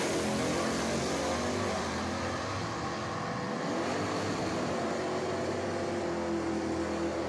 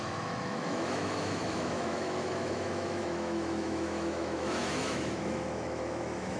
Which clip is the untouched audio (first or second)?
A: first